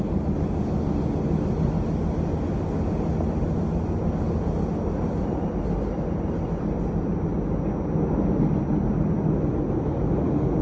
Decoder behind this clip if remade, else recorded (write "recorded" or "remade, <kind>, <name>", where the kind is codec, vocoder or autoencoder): recorded